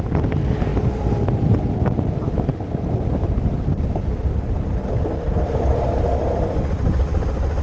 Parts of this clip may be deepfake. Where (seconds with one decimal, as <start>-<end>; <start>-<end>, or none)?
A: none